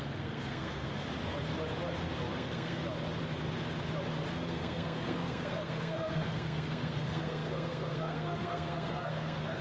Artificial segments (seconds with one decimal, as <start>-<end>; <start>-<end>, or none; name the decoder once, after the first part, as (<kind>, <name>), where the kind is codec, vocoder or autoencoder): 0.0-0.9 (codec, SNAC); 2.3-2.8; 4.3-9.6